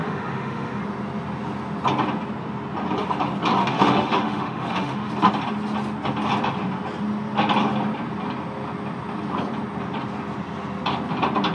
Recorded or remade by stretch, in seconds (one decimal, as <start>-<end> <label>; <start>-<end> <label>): 0.0-0.8 remade; 0.8-3.6 recorded; 3.6-5.1 remade; 5.1-11.5 recorded